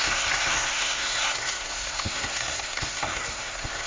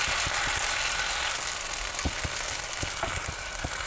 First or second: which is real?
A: second